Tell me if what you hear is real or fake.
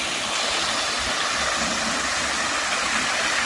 real